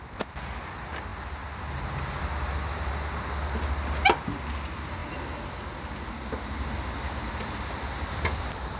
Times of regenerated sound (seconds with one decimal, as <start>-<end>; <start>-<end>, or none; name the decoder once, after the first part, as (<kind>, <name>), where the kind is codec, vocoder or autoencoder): none